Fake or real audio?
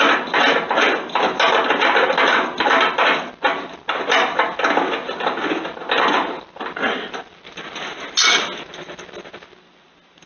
real